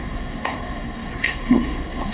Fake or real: fake